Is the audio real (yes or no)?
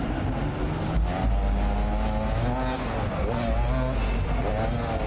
yes